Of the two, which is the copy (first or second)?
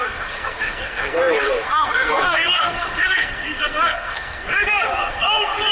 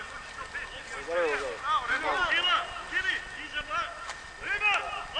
first